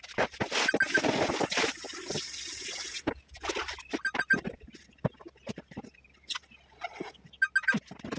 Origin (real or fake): real